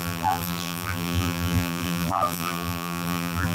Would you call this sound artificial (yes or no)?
yes